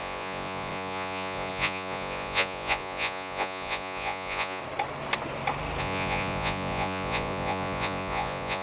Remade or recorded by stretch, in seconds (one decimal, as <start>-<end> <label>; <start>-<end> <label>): 0.0-4.6 remade; 4.6-5.8 recorded; 5.8-8.6 remade